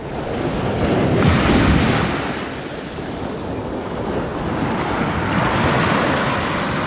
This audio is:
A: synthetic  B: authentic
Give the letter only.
B